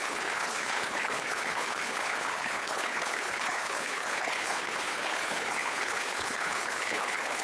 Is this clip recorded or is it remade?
remade